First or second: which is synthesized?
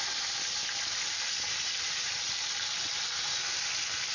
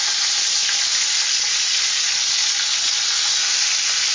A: first